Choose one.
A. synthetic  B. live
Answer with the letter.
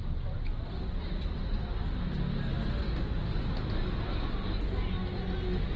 B